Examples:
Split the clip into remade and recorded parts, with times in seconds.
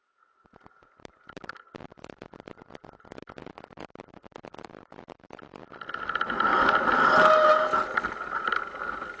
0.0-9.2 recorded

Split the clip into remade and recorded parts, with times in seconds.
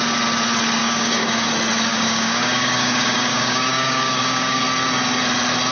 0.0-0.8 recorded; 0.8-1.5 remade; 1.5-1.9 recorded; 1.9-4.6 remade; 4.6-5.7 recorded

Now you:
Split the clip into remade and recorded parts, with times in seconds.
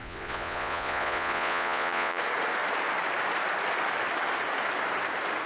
0.0-2.2 remade; 2.2-5.5 recorded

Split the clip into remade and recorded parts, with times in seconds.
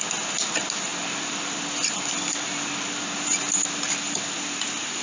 0.0-5.0 recorded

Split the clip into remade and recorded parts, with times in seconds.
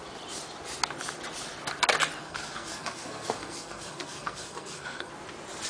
0.0-2.2 recorded; 2.2-5.1 remade; 5.1-5.7 recorded